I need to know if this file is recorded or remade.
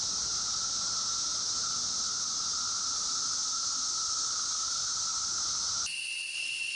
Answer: recorded